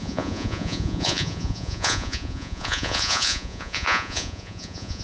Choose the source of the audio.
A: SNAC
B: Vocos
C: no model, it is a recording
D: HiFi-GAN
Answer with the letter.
B